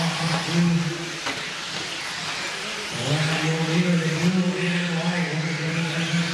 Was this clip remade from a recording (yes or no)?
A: no